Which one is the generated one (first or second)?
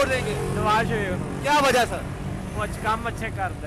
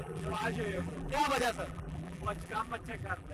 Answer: second